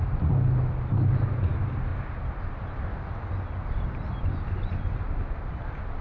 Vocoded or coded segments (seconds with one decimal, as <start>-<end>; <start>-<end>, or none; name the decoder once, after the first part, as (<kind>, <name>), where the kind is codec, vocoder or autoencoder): none